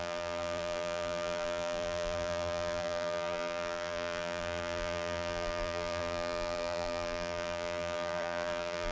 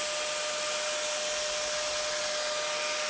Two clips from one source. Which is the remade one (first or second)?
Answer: first